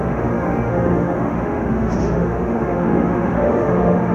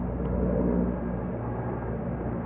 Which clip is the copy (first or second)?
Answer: first